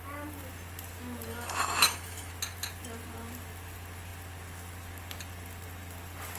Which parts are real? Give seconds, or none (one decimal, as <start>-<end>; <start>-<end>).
0.0-1.3; 2.3-6.4